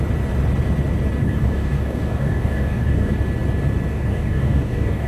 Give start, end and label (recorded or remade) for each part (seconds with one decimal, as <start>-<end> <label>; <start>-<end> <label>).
0.0-1.2 recorded; 1.2-3.2 remade; 3.2-3.9 recorded; 3.9-5.1 remade